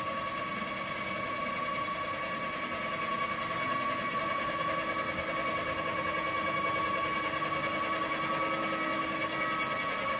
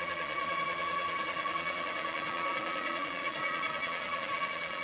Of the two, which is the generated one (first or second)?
second